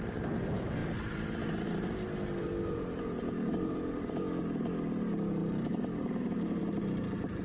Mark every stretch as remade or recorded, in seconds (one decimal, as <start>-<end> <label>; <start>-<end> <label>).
0.0-5.4 recorded; 5.4-7.4 remade